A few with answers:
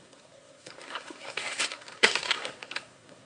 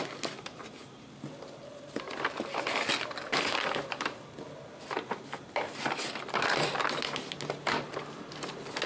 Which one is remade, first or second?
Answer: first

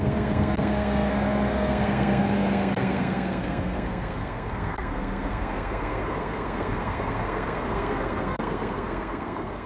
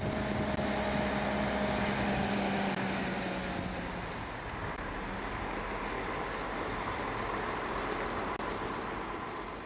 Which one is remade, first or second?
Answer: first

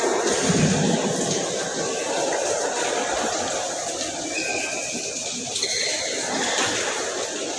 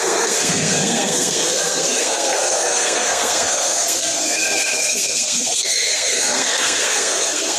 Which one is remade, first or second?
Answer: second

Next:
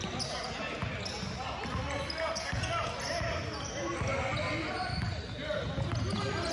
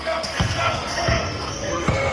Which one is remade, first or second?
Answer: second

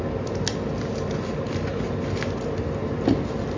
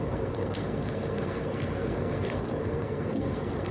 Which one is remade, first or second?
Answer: second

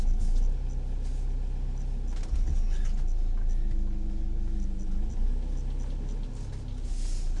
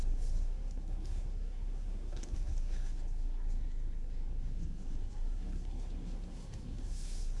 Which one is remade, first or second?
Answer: second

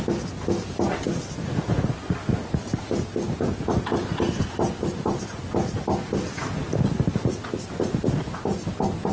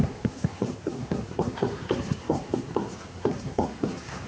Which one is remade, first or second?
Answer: second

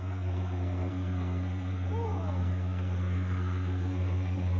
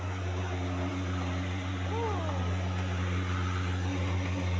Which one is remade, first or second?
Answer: first